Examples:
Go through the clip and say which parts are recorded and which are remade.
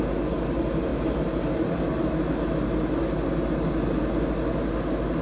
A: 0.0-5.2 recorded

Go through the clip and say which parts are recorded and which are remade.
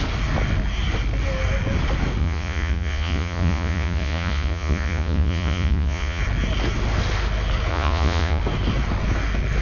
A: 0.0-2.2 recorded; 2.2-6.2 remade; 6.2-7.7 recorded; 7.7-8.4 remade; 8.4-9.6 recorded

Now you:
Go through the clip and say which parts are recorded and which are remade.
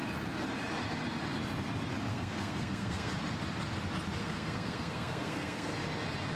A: 0.0-2.1 recorded; 2.1-3.2 remade; 3.2-4.2 recorded; 4.2-5.7 remade; 5.7-6.4 recorded